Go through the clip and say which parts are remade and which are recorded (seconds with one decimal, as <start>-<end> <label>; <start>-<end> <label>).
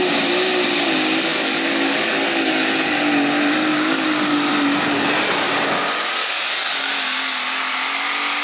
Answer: 0.0-1.3 recorded; 1.3-3.0 remade; 3.0-3.7 recorded; 3.7-4.5 remade; 4.5-6.2 recorded; 6.2-6.9 remade; 6.9-8.4 recorded